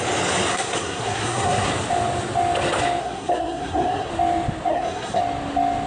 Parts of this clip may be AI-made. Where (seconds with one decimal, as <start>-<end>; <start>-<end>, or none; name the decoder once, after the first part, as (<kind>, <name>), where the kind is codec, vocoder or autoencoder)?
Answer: 0.5-1.7 (codec, SNAC); 3.0-4.1; 4.7-5.2